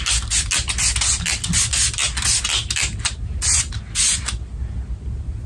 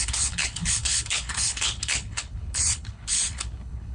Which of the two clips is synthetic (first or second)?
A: second